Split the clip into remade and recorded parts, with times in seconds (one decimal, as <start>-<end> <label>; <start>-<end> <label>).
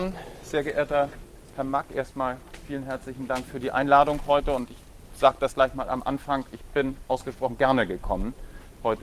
0.0-1.7 recorded; 1.7-2.7 remade; 2.7-5.3 recorded; 5.3-6.0 remade; 6.0-6.7 recorded; 6.7-7.5 remade; 7.5-9.0 recorded